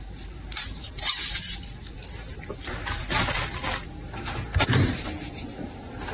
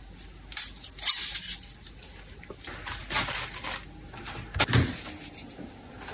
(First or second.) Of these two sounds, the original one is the second